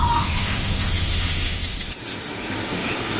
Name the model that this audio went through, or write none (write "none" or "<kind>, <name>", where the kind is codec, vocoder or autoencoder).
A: autoencoder, DAC-VAE